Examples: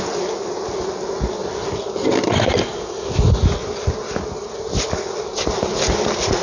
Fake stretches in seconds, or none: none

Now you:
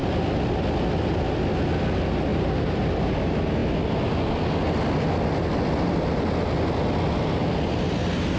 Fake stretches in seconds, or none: none

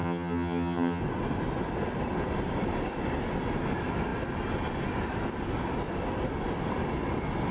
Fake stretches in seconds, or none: 0.0-1.0 (vocoder, HiFi-GAN)

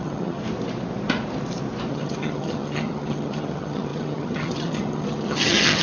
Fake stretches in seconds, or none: 0.0-0.4 (vocoder, HiFi-GAN); 1.9-5.8

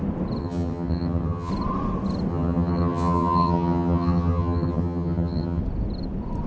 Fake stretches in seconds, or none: 0.4-1.5 (vocoder, HiFi-GAN); 2.3-5.6

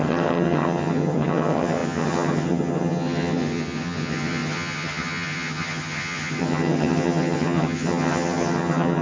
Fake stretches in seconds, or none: 0.0-9.0 (vocoder, HiFi-GAN)

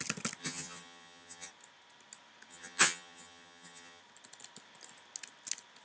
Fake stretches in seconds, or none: 0.4-1.5 (vocoder, HiFi-GAN); 2.5-4.0

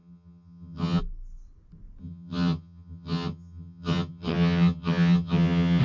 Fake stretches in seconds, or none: 0.0-1.0 (vocoder, HiFi-GAN); 2.0-5.8